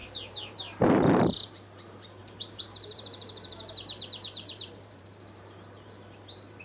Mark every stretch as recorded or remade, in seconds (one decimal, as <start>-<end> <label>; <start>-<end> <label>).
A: 0.0-1.5 remade; 1.5-2.2 recorded; 2.2-6.6 remade